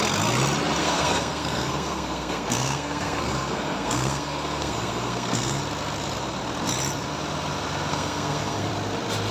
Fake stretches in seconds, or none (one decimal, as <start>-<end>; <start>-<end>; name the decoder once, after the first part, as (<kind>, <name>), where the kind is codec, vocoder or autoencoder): 0.8-5.6 (codec, SNAC); 7.9-8.7